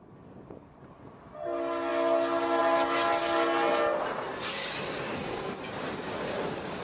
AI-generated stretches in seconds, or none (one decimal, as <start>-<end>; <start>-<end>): 5.1-5.6